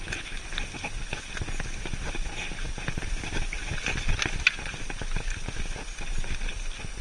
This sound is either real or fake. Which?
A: real